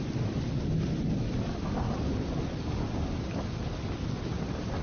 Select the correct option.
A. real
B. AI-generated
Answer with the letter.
A